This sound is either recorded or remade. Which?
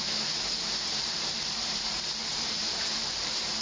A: remade